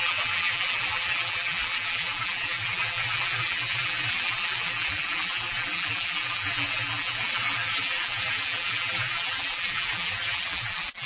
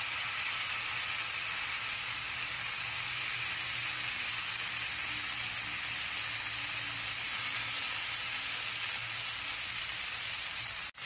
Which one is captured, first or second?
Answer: second